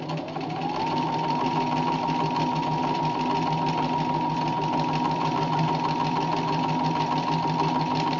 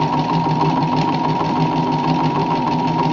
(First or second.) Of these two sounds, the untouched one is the first